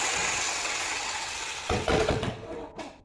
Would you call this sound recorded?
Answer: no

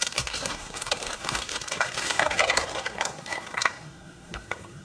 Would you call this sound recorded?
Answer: no